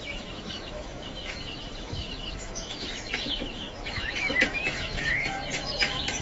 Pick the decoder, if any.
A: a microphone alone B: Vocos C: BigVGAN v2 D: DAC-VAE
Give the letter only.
D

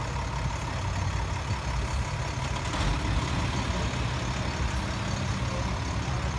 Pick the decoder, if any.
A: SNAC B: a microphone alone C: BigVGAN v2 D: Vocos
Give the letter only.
B